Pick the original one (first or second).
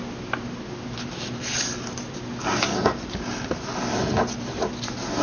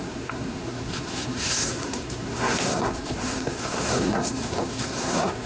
first